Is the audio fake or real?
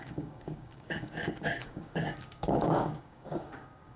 fake